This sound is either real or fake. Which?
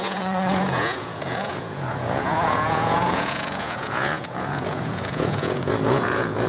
fake